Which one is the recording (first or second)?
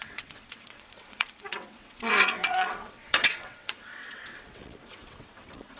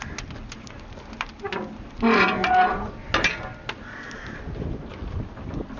second